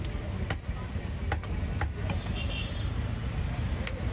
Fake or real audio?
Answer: real